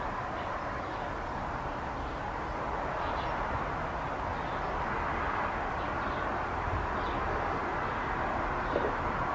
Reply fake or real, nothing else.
real